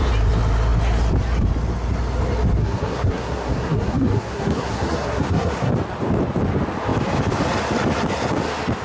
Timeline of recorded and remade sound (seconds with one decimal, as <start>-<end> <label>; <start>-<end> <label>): 0.0-2.6 recorded; 2.6-5.7 remade; 5.7-8.8 recorded